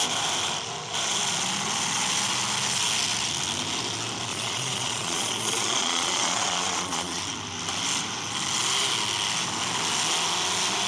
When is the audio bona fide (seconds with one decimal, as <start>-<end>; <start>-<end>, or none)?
0.0-4.3; 7.2-10.9